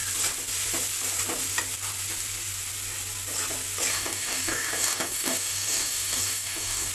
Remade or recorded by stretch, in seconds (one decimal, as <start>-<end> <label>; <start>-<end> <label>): 0.0-3.9 recorded; 3.9-6.9 remade